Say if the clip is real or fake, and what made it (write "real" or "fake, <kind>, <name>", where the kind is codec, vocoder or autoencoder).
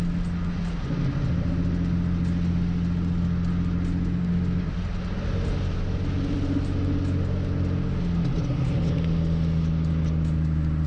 real